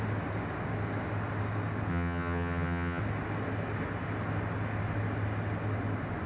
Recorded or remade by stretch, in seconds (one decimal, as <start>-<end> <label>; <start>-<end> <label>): 0.0-1.9 recorded; 1.9-3.0 remade; 3.0-6.3 recorded